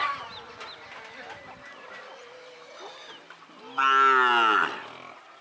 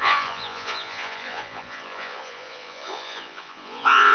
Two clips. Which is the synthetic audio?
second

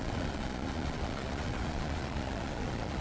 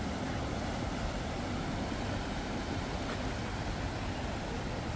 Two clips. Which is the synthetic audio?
first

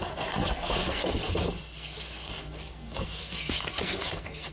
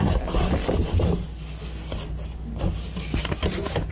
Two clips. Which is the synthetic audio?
first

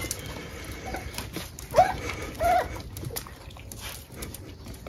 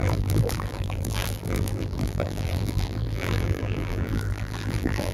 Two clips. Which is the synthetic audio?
second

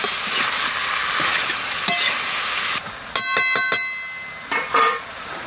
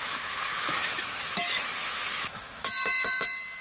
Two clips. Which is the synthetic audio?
second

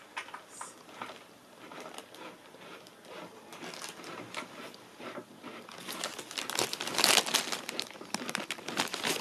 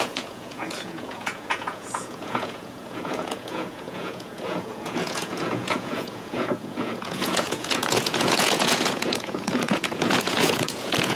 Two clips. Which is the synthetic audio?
second